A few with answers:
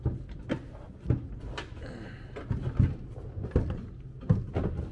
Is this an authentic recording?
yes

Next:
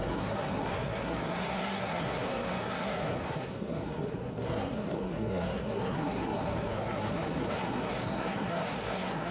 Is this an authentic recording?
no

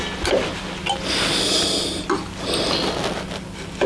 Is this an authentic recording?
yes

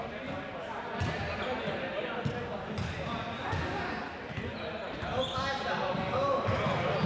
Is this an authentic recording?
yes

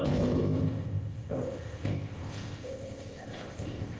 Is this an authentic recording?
no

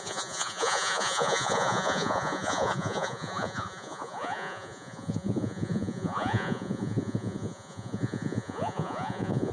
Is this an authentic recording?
no